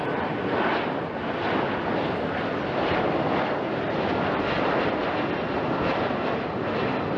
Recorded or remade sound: recorded